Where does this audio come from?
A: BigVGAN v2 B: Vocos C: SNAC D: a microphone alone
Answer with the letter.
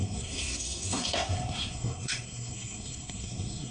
C